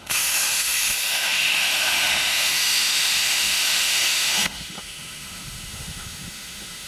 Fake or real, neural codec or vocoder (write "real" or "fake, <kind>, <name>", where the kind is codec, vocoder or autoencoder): fake, autoencoder, DAC-VAE